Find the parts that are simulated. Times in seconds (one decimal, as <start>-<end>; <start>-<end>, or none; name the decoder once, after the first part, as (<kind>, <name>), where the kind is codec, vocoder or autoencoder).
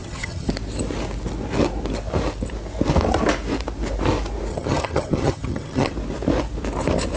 0.0-0.5 (vocoder, HiFi-GAN); 4.5-5.9